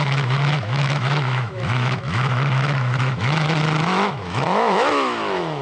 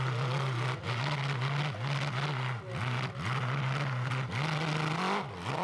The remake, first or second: first